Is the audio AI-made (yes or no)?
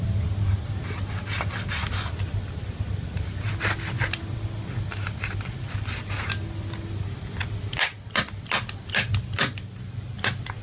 no